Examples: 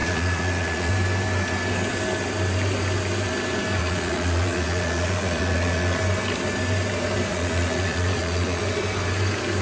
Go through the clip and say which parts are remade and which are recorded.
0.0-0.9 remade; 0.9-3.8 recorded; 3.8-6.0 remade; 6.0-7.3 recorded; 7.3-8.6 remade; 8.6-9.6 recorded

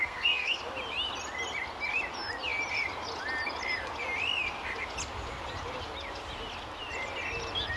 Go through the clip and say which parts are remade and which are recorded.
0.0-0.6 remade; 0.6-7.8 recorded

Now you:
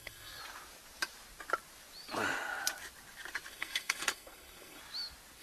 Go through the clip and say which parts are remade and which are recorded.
0.0-0.4 remade; 0.4-3.5 recorded; 3.5-4.8 remade; 4.8-5.4 recorded